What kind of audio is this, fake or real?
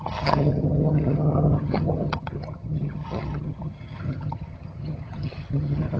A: fake